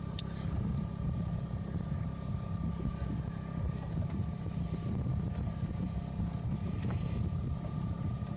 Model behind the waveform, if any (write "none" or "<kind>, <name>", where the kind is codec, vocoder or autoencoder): none